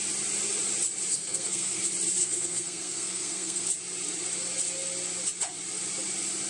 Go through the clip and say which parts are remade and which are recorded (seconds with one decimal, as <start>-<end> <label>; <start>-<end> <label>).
0.0-1.1 recorded; 1.1-1.8 remade; 1.8-2.2 recorded; 2.2-3.6 remade; 3.6-6.5 recorded